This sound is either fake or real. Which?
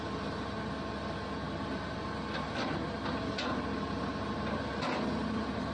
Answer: real